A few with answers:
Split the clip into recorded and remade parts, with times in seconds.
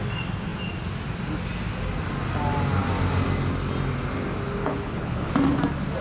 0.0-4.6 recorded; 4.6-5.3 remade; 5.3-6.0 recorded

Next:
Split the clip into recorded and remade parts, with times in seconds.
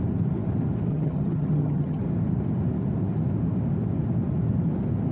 0.0-0.9 recorded; 0.9-2.0 remade; 2.0-5.1 recorded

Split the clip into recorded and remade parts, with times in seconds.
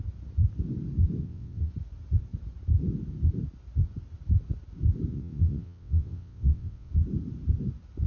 0.0-1.2 recorded; 1.2-1.7 remade; 1.7-5.1 recorded; 5.1-6.9 remade; 6.9-8.1 recorded